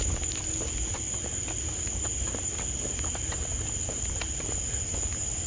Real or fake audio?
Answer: real